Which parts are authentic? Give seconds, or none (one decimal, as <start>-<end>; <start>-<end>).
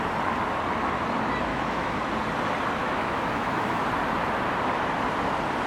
0.0-1.5; 2.0-2.8; 3.8-5.7